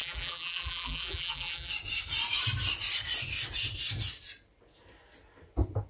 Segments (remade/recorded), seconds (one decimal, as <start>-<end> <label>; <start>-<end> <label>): 0.0-1.7 remade; 1.7-5.9 recorded